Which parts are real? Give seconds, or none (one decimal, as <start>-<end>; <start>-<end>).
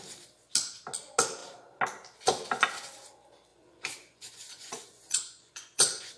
0.0-3.5